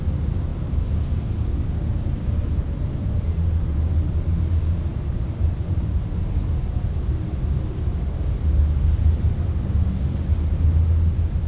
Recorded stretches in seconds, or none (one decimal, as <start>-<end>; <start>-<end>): 0.0-4.9; 5.9-11.5